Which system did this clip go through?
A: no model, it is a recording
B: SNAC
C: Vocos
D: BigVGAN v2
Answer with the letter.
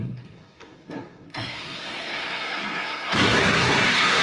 B